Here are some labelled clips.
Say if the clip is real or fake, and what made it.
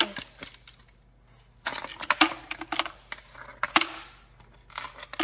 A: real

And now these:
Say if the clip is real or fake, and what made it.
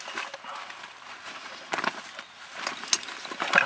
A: real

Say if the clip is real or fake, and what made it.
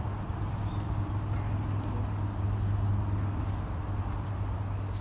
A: real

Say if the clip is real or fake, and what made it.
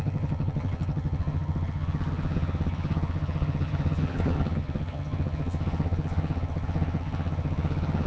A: fake, vocoder, HiFi-GAN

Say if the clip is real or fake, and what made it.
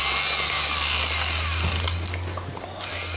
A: real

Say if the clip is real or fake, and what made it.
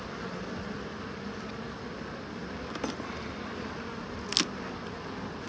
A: real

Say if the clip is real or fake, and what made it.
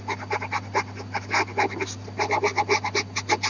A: real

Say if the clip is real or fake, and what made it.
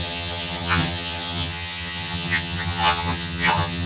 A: fake, vocoder, HiFi-GAN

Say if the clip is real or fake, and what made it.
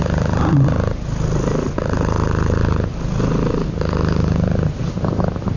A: real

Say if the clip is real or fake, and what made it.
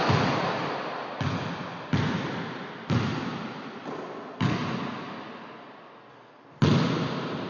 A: real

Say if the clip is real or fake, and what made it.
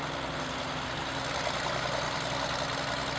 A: real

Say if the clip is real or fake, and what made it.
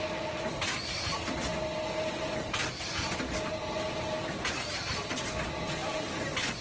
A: real